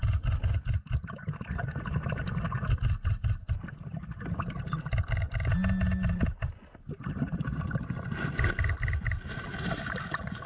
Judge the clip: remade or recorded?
recorded